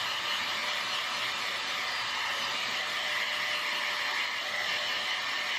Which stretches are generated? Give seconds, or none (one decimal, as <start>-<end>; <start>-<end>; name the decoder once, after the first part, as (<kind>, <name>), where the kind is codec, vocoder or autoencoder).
none